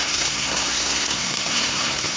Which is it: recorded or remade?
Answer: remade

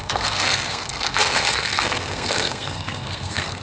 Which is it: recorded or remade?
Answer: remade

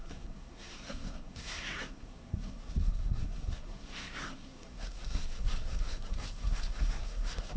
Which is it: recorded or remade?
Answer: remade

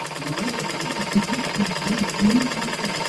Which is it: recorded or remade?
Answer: recorded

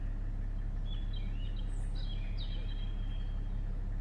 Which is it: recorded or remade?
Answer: recorded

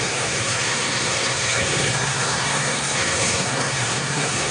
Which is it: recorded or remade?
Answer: remade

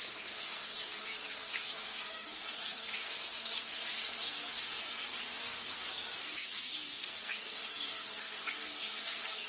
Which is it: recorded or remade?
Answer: remade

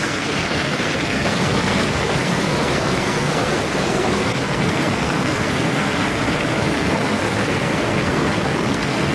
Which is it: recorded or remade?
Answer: remade